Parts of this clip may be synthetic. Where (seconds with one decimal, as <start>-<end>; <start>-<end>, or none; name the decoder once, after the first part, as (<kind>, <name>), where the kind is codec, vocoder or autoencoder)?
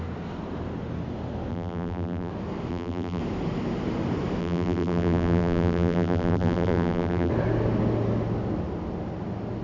1.5-2.3 (vocoder, BigVGAN v2); 2.7-3.2; 4.4-7.3